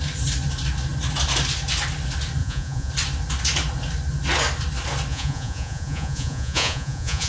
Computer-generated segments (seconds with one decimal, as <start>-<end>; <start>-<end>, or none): 2.4-2.9; 5.1-7.3